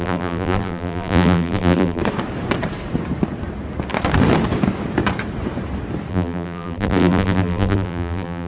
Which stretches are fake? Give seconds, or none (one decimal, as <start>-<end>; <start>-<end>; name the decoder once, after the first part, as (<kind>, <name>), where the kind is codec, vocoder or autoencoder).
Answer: 0.0-2.0 (vocoder, BigVGAN v2); 6.1-8.5